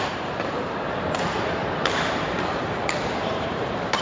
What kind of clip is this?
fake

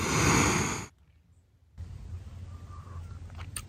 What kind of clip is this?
real